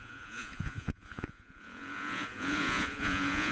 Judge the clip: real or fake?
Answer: fake